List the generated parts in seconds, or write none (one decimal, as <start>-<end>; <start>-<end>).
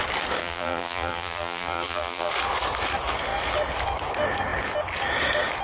0.4-2.3